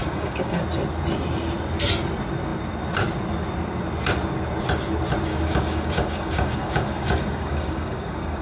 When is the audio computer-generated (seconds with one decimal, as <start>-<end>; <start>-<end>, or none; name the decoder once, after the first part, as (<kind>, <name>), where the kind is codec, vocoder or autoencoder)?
0.0-0.6 (codec, DAC); 5.3-8.4